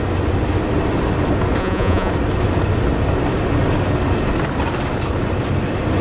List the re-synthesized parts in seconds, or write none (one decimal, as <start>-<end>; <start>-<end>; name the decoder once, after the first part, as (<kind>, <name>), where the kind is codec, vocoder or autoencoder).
1.6-2.1 (vocoder, Vocos)